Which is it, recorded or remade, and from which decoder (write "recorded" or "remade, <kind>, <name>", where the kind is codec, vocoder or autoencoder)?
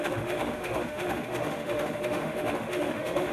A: remade, autoencoder, DAC-VAE